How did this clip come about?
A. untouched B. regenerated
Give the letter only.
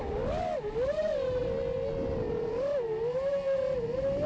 A